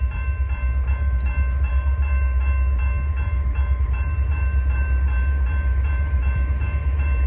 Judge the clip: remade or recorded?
remade